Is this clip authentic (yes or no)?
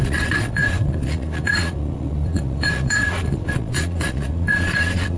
no